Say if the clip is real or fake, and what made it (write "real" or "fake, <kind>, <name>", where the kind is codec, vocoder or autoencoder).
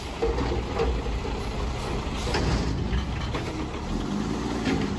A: real